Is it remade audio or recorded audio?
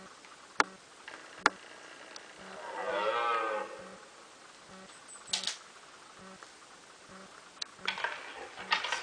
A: recorded